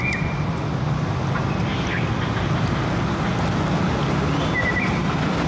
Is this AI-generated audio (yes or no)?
no